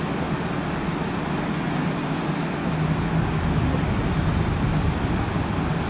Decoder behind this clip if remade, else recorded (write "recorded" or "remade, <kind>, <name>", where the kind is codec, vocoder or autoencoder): recorded